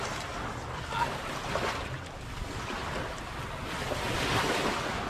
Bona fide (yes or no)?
yes